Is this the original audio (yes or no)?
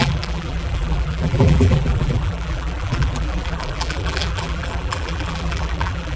no